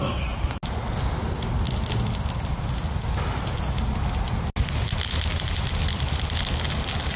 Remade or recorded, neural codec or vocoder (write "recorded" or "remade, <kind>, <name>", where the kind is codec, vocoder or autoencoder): recorded